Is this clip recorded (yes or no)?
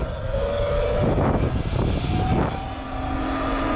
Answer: yes